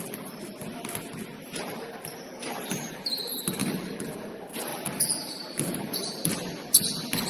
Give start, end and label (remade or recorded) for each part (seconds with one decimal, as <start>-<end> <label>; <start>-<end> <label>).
0.0-3.6 recorded; 3.6-4.3 remade; 4.3-4.7 recorded; 4.7-6.7 remade; 6.7-7.3 recorded